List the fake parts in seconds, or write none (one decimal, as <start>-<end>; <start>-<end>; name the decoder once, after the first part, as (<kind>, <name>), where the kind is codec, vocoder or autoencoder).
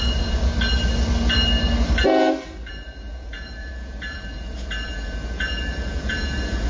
0.0-0.5 (vocoder, Vocos); 2.7-6.7